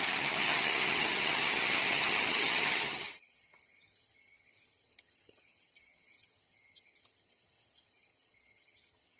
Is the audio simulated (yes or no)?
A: yes